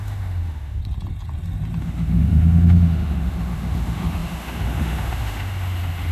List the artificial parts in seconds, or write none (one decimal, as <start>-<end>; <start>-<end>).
0.0-0.8; 1.8-6.1